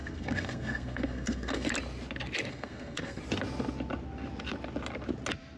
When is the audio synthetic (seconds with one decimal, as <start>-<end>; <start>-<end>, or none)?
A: 0.0-1.7; 2.5-3.2